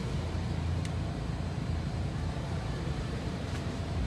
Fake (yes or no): yes